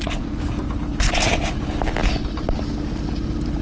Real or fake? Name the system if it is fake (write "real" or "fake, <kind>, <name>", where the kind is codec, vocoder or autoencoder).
real